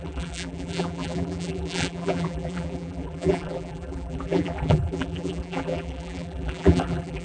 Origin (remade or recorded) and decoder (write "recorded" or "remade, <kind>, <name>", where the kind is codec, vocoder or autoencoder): remade, vocoder, BigVGAN v2